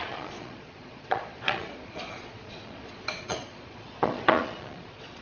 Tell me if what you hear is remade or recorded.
remade